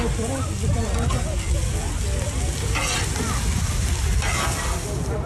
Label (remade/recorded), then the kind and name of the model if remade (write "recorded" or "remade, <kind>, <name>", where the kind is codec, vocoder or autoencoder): recorded